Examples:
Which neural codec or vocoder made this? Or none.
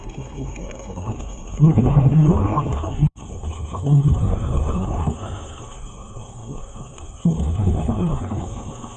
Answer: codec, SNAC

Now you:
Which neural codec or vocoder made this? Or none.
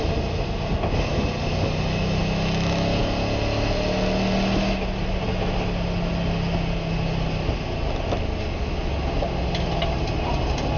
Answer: none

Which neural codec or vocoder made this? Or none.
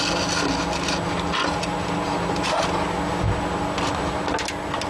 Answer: none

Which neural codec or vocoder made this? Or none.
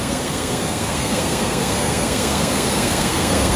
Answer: codec, SNAC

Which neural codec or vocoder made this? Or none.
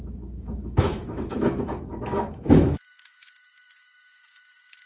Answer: autoencoder, DAC-VAE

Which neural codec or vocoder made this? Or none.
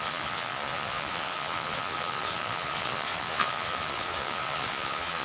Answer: vocoder, Vocos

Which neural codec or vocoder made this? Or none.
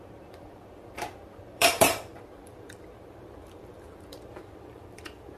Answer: vocoder, BigVGAN v2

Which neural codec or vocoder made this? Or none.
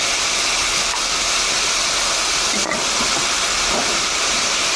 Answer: none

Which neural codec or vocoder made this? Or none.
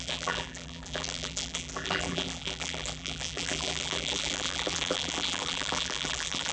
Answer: vocoder, BigVGAN v2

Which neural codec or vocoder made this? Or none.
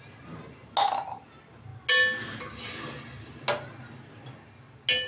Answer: none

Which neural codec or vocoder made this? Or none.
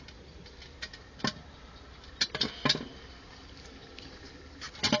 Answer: none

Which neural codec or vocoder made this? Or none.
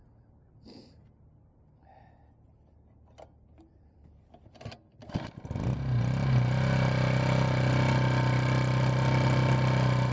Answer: none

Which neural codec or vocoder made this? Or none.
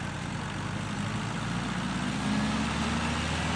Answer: none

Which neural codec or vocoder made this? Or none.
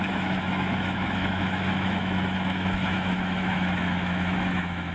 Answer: autoencoder, DAC-VAE